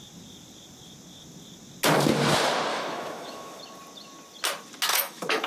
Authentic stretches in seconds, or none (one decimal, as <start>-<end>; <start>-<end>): 0.0-2.7; 3.6-4.9